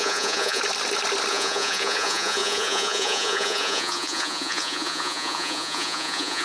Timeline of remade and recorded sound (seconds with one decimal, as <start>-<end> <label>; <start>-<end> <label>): 0.0-0.6 remade; 0.6-1.3 recorded; 1.3-6.4 remade

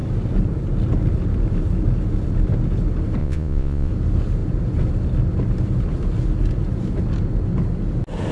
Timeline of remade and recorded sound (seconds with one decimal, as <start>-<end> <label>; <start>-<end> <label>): 0.0-3.2 recorded; 3.2-3.9 remade; 3.9-8.3 recorded

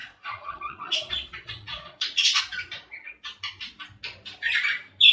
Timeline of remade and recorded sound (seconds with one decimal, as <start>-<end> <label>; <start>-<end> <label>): 0.0-2.4 remade; 2.4-5.1 recorded

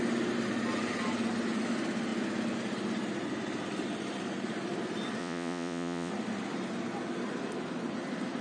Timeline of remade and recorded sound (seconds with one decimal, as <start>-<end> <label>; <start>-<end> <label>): 0.0-5.2 recorded; 5.2-6.1 remade; 6.1-8.4 recorded